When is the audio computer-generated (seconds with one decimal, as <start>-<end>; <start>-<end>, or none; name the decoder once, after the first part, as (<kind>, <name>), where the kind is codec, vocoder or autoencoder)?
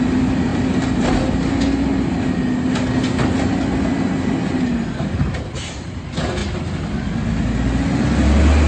none